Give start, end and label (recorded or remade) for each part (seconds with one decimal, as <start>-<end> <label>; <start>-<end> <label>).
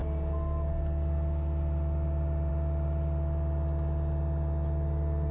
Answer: 0.0-5.3 recorded